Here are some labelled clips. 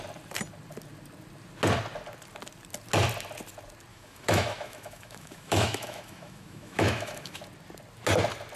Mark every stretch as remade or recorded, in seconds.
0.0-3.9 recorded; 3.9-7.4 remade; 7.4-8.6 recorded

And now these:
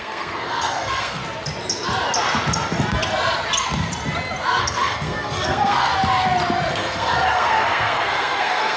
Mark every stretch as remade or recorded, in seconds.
0.0-1.2 remade; 1.2-4.6 recorded; 4.6-5.9 remade; 5.9-6.7 recorded; 6.7-8.8 remade

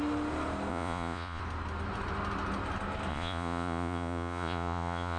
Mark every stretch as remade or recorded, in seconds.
0.0-0.7 recorded; 0.7-1.4 remade; 1.4-3.1 recorded; 3.1-5.2 remade

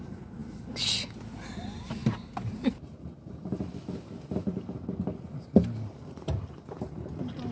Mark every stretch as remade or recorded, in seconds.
0.0-7.5 recorded

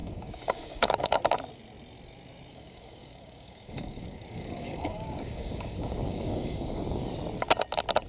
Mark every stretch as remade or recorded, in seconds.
0.0-1.2 remade; 1.2-2.5 recorded; 2.5-7.1 remade; 7.1-8.1 recorded